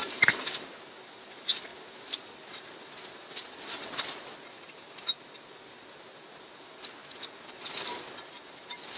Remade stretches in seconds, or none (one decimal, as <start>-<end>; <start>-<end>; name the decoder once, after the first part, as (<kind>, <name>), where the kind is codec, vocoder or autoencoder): none